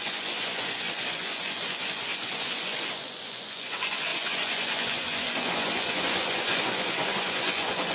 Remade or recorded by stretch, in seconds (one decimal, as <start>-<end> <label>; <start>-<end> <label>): 0.0-7.9 remade